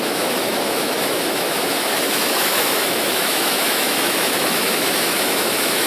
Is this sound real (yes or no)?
no